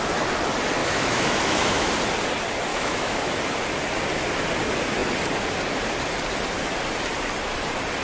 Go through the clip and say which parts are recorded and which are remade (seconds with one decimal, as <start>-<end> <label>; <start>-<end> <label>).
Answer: 0.0-0.8 recorded; 0.8-1.9 remade; 1.9-2.7 recorded; 2.7-3.3 remade; 3.3-8.0 recorded